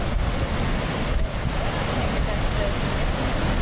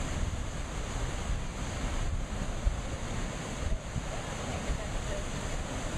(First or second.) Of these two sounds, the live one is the first